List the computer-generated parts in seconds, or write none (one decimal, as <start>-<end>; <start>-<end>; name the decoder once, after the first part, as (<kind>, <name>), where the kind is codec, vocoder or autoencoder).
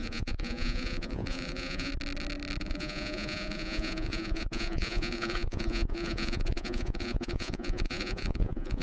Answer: 0.0-1.9 (vocoder, Vocos); 2.6-8.8